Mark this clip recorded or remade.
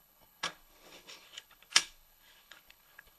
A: remade